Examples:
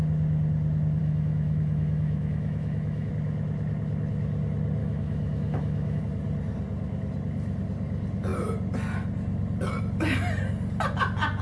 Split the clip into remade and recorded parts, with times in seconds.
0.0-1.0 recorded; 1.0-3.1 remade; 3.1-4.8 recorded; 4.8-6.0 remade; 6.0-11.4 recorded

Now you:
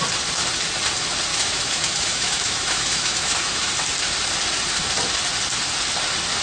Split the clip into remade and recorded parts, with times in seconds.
0.0-1.3 recorded; 1.3-3.7 remade; 3.7-6.4 recorded

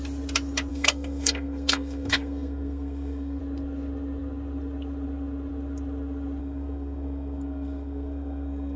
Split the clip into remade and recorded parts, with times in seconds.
0.0-0.7 recorded; 0.7-3.4 remade; 3.4-6.4 recorded; 6.4-8.8 remade